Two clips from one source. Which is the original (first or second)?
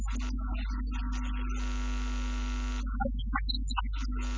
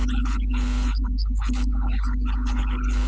first